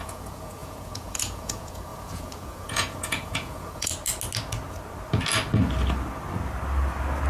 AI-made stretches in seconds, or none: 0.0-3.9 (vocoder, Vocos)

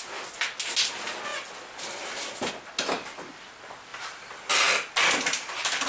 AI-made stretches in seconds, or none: none

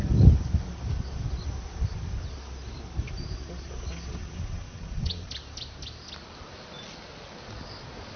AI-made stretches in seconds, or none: 4.2-5.3 (vocoder, WaveNeXt)

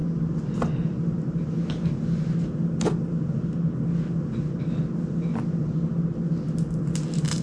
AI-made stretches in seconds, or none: none